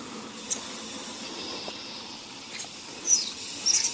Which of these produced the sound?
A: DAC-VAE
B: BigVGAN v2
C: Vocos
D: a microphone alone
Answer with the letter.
D